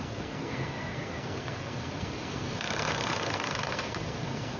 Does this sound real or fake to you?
fake